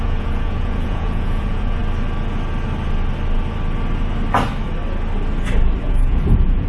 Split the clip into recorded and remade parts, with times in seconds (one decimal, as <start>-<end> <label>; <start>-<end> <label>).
0.0-1.8 remade; 1.8-5.8 recorded; 5.8-6.7 remade